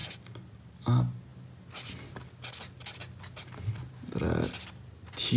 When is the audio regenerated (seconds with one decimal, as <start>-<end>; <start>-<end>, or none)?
none